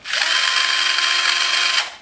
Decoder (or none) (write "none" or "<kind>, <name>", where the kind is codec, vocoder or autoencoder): none